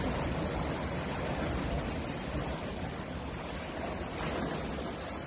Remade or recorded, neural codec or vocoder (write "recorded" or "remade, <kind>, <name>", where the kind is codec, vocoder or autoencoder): recorded